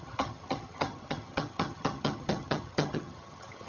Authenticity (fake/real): fake